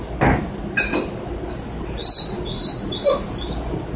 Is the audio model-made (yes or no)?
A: no